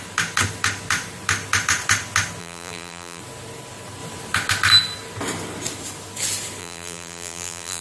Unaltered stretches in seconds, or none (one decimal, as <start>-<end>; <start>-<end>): 0.0-2.4; 3.2-6.6